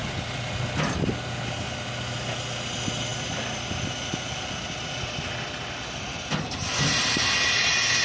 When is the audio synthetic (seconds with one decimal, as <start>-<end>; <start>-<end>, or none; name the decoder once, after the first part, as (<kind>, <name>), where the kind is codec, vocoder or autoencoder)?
0.0-0.5 (vocoder, BigVGAN v2)